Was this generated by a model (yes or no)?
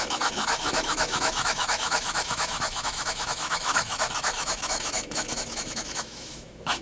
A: yes